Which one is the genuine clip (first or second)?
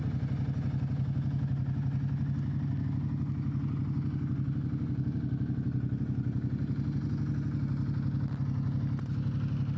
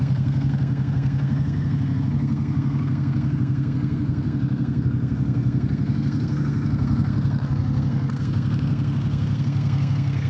first